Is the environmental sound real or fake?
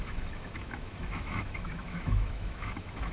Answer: fake